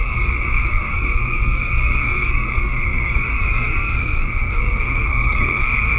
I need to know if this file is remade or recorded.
remade